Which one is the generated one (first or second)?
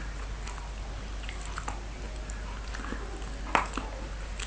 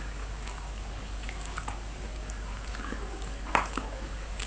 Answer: second